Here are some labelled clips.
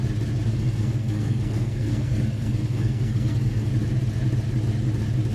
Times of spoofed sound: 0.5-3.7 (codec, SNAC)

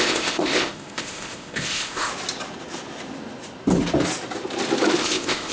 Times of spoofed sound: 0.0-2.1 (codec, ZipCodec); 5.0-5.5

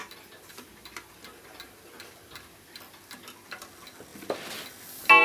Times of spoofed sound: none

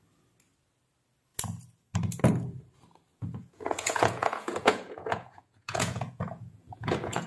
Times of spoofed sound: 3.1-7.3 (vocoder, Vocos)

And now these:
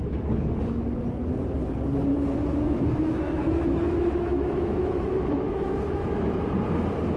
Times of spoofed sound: 2.1-6.4 (autoencoder, DAC-VAE)

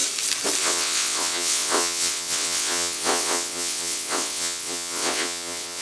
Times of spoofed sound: 0.6-5.8 (vocoder, WaveNeXt)

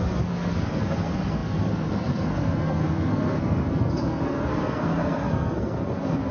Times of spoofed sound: 0.0-6.3 (codec, SNAC)